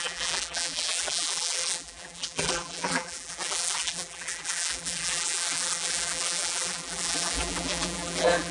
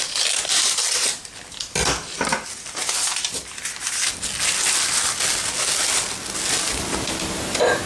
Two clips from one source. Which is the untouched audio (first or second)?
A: second